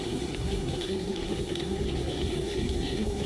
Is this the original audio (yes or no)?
no